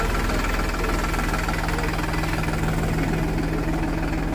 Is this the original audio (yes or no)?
yes